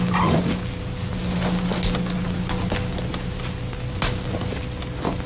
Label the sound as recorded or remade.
recorded